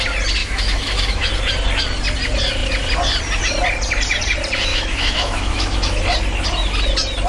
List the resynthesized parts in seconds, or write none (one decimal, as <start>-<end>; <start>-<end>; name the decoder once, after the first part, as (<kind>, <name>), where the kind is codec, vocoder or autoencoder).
0.4-1.3 (autoencoder, DAC-VAE); 4.7-6.0